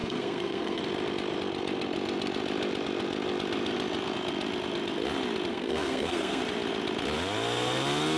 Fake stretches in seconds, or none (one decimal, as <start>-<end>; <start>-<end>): 0.0-0.8; 5.5-6.4